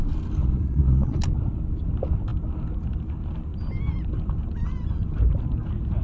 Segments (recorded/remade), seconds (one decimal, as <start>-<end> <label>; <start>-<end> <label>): 0.0-0.4 recorded; 0.4-1.2 remade; 1.2-6.0 recorded